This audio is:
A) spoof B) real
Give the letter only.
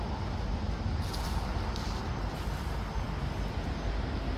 B